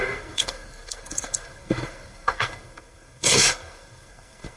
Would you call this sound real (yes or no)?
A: no